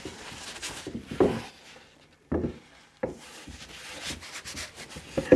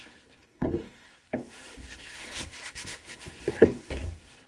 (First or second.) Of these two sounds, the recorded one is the first